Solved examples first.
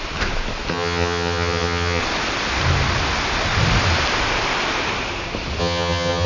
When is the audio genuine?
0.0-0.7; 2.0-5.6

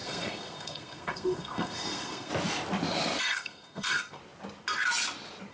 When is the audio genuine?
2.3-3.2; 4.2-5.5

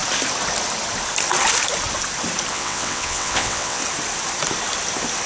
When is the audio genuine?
0.0-2.5; 3.8-5.3

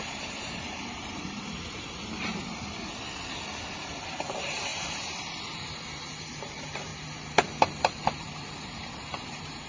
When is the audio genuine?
2.3-4.2; 6.9-8.1